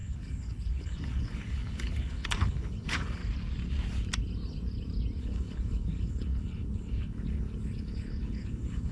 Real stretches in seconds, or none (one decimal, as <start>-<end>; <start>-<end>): 3.2-5.2